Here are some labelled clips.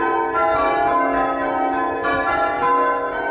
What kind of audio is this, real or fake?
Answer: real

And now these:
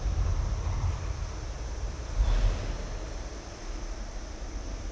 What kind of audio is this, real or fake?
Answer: real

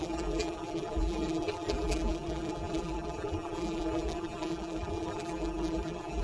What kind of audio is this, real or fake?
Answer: fake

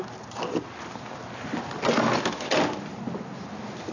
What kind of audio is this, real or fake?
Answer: real